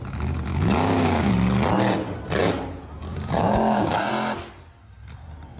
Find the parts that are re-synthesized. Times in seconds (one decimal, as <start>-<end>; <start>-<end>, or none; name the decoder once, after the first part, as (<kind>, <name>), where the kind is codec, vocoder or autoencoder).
0.5-1.3 (codec, DAC); 3.1-4.1